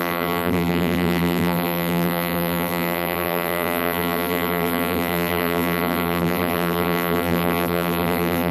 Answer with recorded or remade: remade